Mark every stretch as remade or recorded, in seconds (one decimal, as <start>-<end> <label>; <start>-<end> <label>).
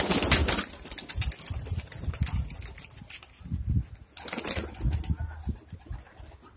0.0-6.6 recorded